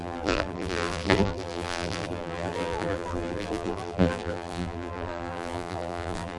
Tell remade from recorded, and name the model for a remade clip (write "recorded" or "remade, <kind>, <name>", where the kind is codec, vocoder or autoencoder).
remade, vocoder, BigVGAN v2